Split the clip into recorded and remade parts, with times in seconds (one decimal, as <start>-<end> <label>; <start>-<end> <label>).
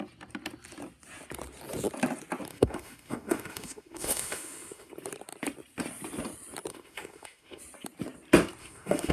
0.0-2.5 recorded; 2.5-4.9 remade; 4.9-6.7 recorded; 6.7-7.6 remade; 7.6-8.6 recorded; 8.6-9.1 remade